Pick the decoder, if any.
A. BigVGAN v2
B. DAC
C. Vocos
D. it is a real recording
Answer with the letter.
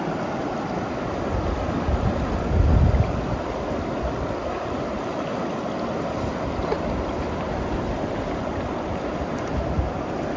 D